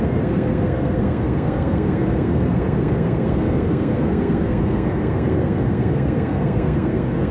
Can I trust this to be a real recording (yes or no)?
no